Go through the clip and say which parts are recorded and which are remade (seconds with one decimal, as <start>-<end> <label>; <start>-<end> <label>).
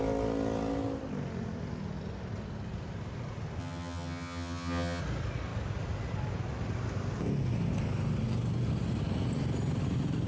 0.0-3.6 recorded; 3.6-5.0 remade; 5.0-10.3 recorded